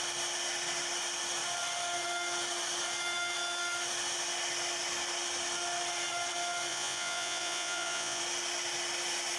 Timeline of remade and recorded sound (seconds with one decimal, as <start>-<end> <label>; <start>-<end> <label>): 0.0-6.7 recorded; 6.7-8.2 remade; 8.2-9.4 recorded